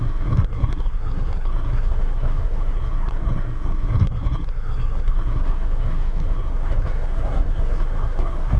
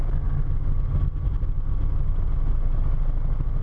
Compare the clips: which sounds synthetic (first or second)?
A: first